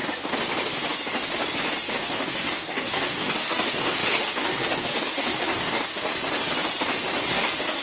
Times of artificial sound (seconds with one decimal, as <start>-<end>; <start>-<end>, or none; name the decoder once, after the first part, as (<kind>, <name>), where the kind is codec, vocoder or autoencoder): 1.9-6.1 (codec, DAC); 7.3-7.8